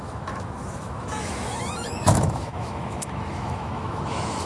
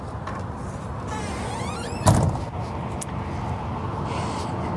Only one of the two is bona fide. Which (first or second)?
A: second